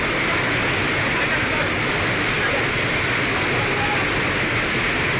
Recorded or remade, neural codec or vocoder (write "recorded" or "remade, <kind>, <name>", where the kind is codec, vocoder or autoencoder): recorded